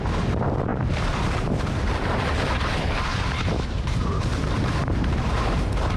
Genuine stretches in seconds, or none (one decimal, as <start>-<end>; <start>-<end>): 3.1-3.7